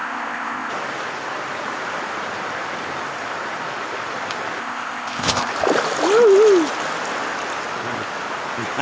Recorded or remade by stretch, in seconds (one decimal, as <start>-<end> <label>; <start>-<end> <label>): 0.0-0.7 remade; 0.7-4.6 recorded; 4.6-5.5 remade; 5.5-8.8 recorded